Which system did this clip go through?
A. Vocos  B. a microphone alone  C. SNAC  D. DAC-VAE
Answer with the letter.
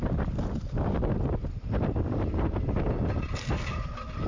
B